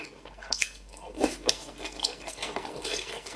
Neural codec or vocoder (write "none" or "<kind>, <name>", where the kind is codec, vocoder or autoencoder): codec, SNAC